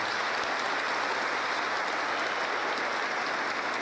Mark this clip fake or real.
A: real